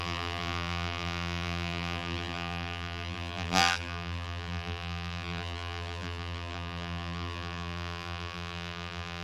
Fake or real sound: fake